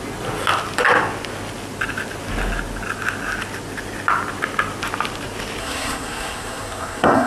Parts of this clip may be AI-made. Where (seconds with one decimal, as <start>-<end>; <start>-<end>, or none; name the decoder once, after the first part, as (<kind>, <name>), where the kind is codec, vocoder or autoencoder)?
5.6-7.3 (codec, SNAC)